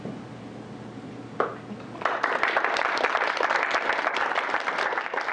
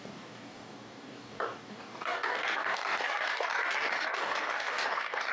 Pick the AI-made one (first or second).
second